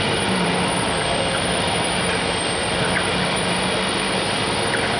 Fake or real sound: fake